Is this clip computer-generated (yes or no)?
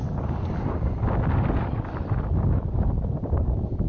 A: no